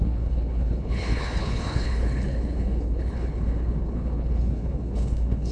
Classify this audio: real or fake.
fake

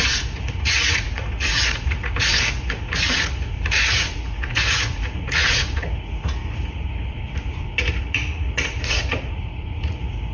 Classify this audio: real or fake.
fake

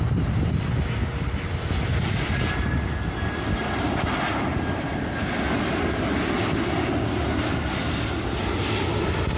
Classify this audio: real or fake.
real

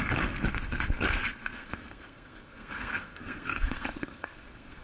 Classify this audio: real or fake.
fake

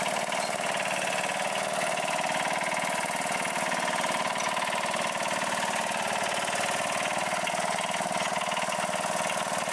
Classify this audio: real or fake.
real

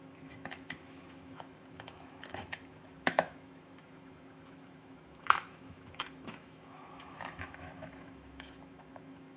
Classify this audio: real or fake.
fake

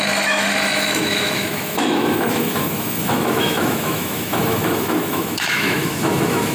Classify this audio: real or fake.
fake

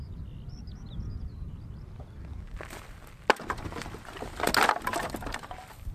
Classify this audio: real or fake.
real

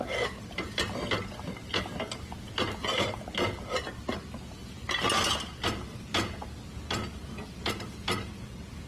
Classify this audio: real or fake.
real